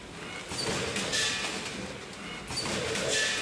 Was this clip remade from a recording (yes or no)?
no